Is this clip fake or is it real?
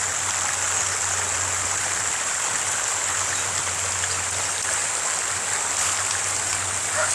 real